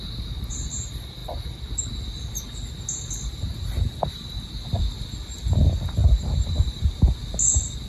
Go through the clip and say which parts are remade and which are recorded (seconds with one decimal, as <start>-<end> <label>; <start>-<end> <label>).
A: 0.0-6.0 recorded; 6.0-6.9 remade; 6.9-7.9 recorded